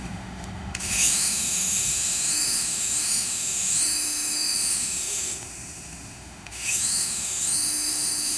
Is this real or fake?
fake